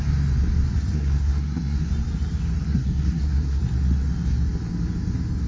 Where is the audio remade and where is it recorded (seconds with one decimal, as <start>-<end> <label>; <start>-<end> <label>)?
0.0-0.7 recorded; 0.7-1.9 remade; 1.9-2.6 recorded; 2.6-3.6 remade; 3.6-5.5 recorded